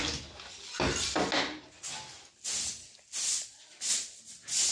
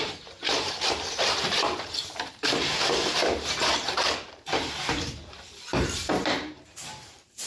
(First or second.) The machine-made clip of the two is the second